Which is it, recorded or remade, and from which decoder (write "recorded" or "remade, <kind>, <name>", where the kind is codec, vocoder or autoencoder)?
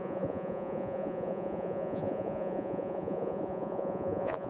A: remade, vocoder, Vocos